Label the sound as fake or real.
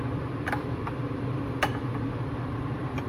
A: fake